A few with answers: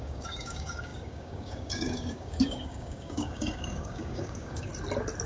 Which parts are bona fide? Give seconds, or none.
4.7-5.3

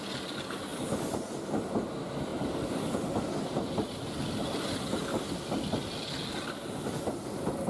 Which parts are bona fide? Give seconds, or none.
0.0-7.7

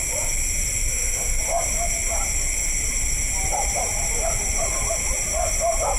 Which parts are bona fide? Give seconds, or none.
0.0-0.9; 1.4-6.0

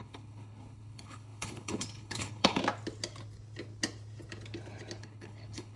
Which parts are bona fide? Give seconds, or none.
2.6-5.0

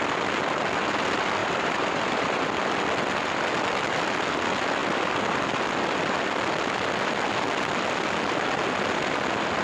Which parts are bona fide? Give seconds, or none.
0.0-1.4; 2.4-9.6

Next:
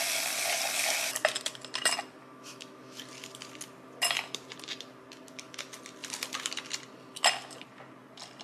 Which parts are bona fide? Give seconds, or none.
0.0-2.2; 3.0-8.4